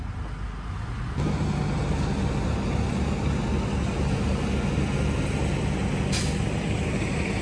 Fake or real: real